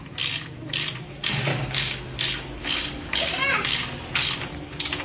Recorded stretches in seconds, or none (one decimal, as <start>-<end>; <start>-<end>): 0.0-1.5; 2.2-2.6; 3.8-5.0